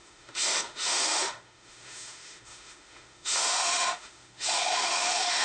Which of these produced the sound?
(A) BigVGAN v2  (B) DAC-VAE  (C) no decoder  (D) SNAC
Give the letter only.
B